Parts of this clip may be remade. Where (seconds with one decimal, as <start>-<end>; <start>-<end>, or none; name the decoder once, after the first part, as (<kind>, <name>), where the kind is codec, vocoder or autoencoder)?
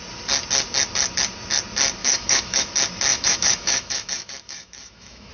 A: 2.0-2.7 (autoencoder, DAC-VAE); 3.1-5.3